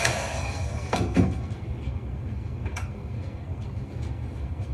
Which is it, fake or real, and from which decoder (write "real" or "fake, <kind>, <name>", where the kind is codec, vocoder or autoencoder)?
fake, codec, SNAC